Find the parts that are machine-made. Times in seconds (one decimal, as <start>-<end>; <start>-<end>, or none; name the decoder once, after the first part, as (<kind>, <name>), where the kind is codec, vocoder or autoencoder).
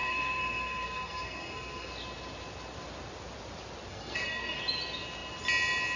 0.0-1.9 (codec, SNAC); 3.9-4.6